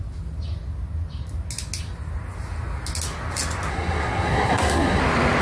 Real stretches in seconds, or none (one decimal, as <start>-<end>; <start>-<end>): 0.0-3.7; 5.0-5.4